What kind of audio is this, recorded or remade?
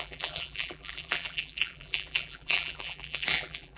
remade